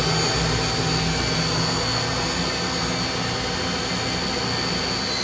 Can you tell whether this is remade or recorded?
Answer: recorded